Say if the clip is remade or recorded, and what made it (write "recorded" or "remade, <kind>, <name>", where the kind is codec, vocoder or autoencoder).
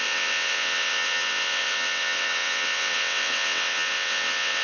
remade, vocoder, WaveNeXt